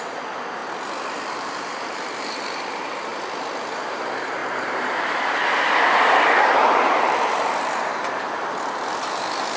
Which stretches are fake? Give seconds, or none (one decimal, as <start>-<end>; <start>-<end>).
0.0-0.6; 1.3-3.1; 3.7-9.6